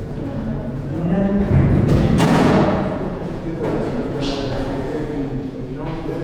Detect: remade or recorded remade